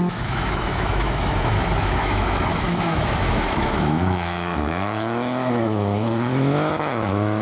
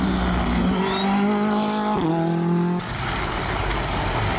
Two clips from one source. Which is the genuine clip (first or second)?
second